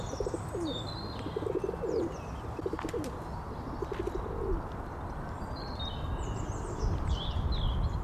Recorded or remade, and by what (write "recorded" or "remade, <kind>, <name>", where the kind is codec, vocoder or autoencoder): recorded